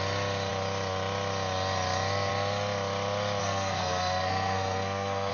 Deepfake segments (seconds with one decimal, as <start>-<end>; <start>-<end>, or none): 3.4-5.3